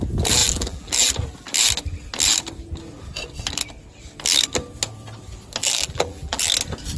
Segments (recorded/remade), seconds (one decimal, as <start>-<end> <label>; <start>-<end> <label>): 0.0-0.4 recorded; 0.4-1.1 remade; 1.1-5.6 recorded; 5.6-6.5 remade; 6.5-7.0 recorded